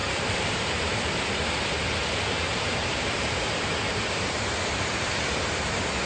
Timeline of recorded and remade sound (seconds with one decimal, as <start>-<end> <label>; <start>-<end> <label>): 0.0-1.2 remade; 1.2-2.5 recorded; 2.5-3.7 remade; 3.7-6.1 recorded